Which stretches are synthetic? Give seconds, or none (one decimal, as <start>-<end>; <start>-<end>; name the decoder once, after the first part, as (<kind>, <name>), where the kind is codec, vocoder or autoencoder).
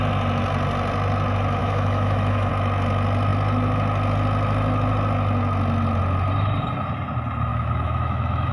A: 1.6-2.5 (autoencoder, DAC-VAE); 7.5-8.5